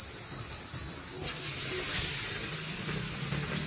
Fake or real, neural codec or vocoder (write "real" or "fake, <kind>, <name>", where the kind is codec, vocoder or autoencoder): real